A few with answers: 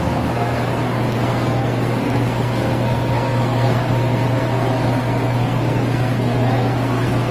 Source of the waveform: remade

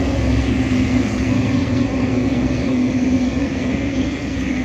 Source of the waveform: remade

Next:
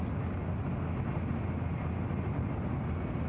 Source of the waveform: recorded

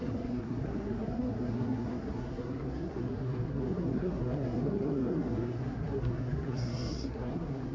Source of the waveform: remade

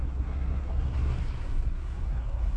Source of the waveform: remade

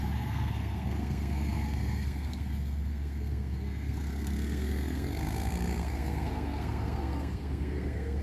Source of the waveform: remade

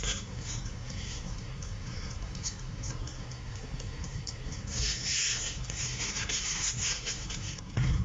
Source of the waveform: remade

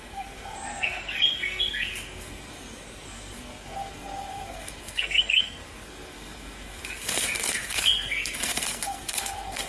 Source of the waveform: remade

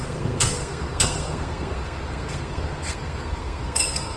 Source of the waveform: remade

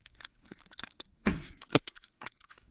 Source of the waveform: remade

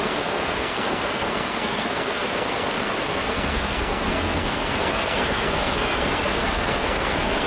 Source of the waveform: remade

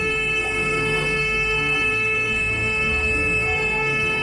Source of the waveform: remade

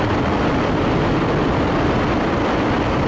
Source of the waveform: recorded